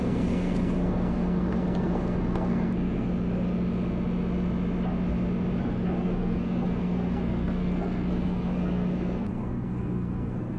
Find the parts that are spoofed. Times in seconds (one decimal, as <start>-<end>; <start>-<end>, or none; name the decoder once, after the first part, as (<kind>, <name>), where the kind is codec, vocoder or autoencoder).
0.0-3.1 (codec, SNAC); 5.6-10.6